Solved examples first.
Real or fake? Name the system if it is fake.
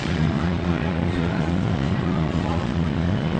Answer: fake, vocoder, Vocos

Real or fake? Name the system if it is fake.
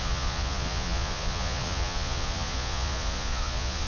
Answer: fake, vocoder, Vocos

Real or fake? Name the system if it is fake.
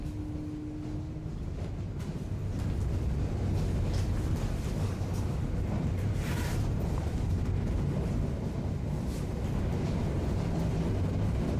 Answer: real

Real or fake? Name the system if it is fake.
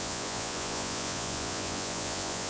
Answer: fake, vocoder, Vocos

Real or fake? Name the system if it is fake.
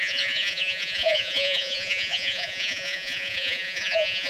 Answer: fake, vocoder, Vocos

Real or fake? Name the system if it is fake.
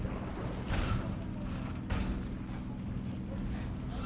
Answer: real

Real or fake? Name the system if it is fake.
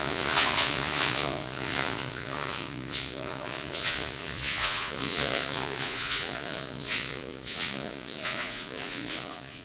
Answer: fake, vocoder, Vocos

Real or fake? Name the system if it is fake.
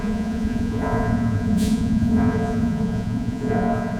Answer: fake, vocoder, Vocos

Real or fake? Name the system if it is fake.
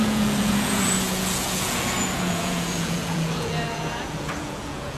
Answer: fake, vocoder, Vocos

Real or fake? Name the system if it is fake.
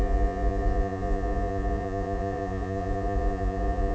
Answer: fake, vocoder, Vocos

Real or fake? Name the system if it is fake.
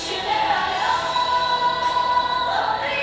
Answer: real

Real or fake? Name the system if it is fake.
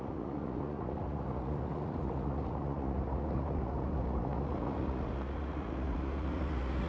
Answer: fake, vocoder, Vocos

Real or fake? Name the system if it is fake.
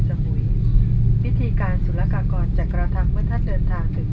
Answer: real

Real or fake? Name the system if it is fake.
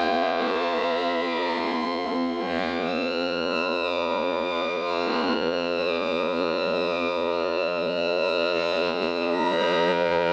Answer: fake, vocoder, Vocos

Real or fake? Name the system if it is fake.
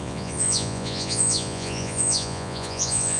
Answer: fake, vocoder, Vocos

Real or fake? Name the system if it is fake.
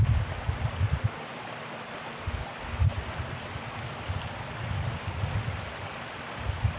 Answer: real